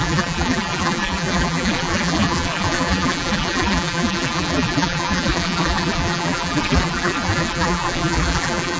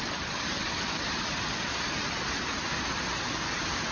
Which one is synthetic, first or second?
first